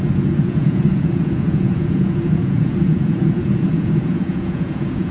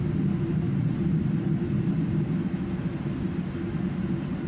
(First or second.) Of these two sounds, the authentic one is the second